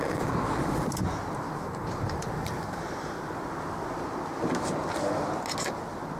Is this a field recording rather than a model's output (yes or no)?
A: yes